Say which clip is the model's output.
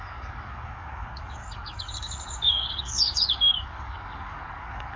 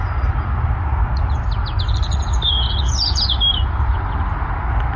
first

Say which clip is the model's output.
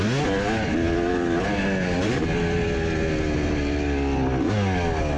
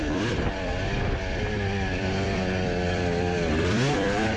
second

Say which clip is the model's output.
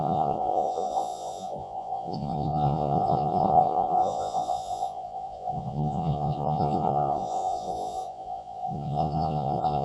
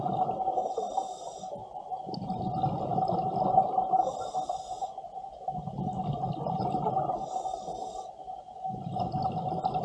first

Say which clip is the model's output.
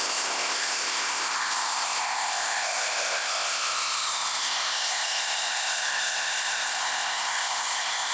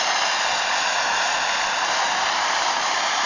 first